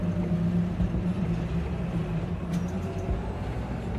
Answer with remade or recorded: remade